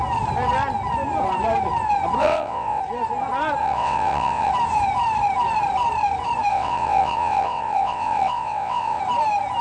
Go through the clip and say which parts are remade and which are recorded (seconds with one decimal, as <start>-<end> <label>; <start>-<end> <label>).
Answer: 0.0-2.2 recorded; 2.2-2.8 remade; 2.8-3.6 recorded; 3.6-4.5 remade; 4.5-6.5 recorded; 6.5-9.0 remade; 9.0-9.6 recorded